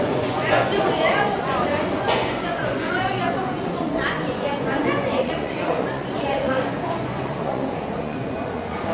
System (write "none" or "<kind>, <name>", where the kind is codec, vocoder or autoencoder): vocoder, Vocos